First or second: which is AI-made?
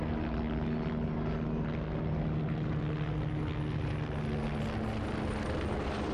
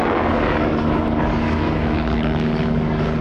second